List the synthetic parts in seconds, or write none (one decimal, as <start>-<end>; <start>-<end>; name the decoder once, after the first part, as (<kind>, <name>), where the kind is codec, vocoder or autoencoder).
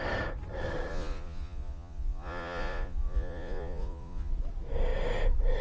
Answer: 0.9-4.3 (vocoder, Vocos)